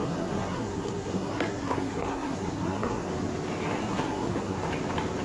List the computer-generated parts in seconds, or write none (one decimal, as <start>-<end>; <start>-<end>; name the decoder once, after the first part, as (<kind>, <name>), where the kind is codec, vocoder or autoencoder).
0.0-3.1 (codec, SNAC); 3.8-4.6